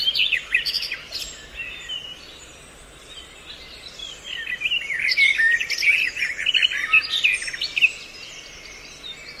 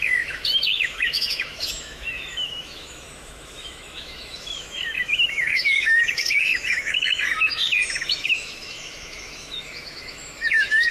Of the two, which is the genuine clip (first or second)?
first